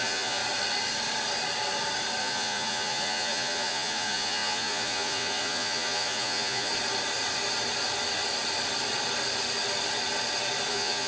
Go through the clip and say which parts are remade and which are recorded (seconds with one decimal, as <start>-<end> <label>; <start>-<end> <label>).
0.0-0.4 remade; 0.4-2.2 recorded; 2.2-6.7 remade; 6.7-10.7 recorded; 10.7-11.1 remade